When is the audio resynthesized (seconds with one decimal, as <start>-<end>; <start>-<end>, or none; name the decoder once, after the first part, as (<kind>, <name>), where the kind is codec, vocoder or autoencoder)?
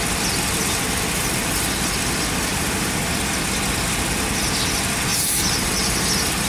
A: 2.5-3.0 (vocoder, BigVGAN v2); 5.1-6.5